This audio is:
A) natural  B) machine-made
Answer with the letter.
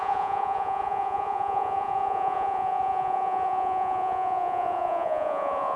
B